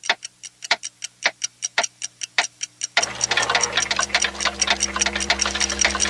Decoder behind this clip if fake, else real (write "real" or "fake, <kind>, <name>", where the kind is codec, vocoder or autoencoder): real